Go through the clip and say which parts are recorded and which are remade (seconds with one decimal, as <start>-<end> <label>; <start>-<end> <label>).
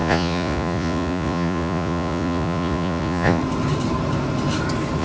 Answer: 0.0-3.4 remade; 3.4-5.0 recorded